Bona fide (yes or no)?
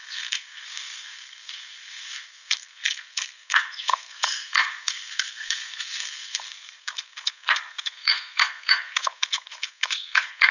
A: no